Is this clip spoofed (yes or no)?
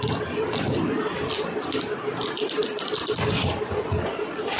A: no